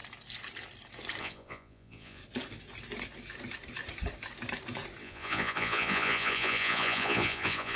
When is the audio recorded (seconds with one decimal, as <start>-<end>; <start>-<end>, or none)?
0.0-1.2; 2.2-5.0